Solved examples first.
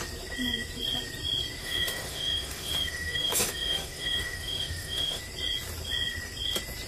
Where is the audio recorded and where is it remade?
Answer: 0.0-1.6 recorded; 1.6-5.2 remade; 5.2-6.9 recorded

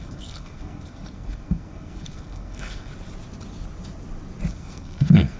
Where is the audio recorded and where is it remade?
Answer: 0.0-2.9 remade; 2.9-4.5 recorded; 4.5-5.4 remade

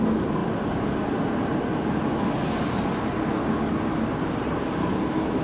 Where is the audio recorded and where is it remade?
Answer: 0.0-5.4 recorded

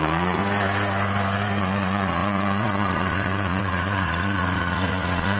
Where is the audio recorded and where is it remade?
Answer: 0.0-0.4 remade; 0.4-1.6 recorded; 1.6-5.4 remade

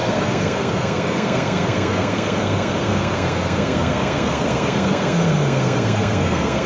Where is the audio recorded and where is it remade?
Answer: 0.0-6.7 remade